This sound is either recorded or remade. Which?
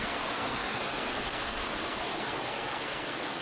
remade